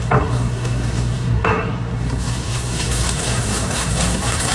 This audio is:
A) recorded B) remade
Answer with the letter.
B